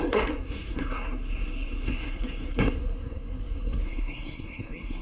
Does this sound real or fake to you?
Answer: fake